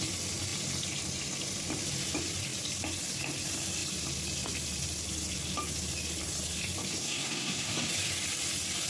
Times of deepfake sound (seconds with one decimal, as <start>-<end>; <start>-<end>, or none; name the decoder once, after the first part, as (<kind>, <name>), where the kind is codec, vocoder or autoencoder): 7.0-7.9 (codec, SNAC)